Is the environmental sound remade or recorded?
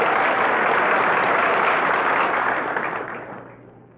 recorded